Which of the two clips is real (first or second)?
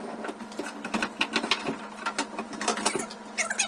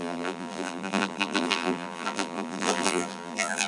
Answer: first